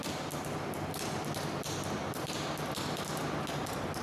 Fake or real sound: real